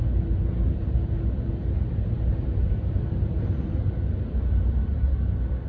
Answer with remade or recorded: recorded